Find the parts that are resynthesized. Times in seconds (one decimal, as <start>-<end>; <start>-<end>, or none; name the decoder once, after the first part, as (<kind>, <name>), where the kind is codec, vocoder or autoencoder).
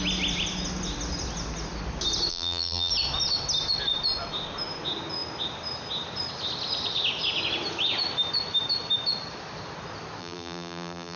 2.3-2.9 (vocoder, BigVGAN v2); 10.2-11.2